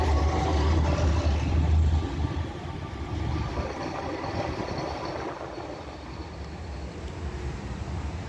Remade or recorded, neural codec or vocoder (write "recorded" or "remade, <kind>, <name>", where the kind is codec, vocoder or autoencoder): recorded